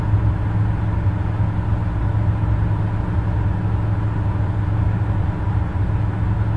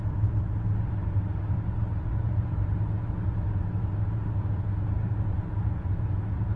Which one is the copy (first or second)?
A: second